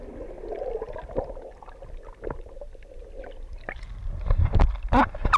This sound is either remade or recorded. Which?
recorded